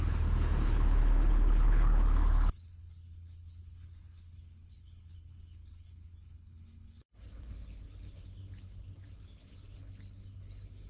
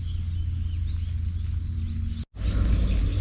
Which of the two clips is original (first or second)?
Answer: second